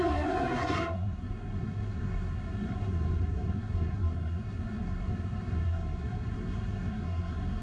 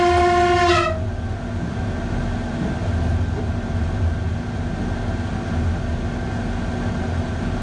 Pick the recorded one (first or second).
second